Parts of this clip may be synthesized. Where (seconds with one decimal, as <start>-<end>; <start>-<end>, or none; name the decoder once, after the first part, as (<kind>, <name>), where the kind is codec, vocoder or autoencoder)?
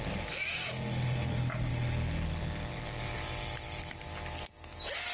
none